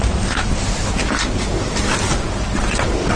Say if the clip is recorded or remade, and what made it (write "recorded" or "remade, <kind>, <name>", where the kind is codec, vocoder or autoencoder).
recorded